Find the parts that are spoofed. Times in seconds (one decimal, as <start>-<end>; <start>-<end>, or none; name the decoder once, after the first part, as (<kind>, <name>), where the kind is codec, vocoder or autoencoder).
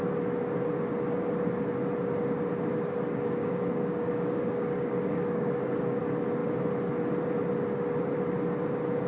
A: 3.4-6.0 (codec, DAC)